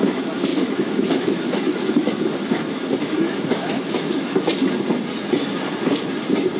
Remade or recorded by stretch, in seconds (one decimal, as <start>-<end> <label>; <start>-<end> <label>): 0.0-4.5 remade; 4.5-6.6 recorded